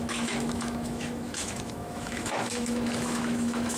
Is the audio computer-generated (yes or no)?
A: yes